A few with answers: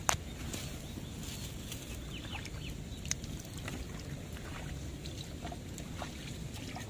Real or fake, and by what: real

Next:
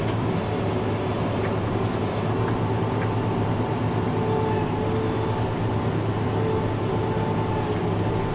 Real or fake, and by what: real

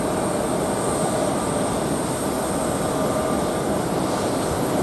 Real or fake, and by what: real